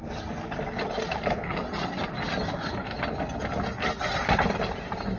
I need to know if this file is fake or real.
real